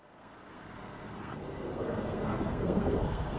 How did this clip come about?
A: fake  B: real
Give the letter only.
A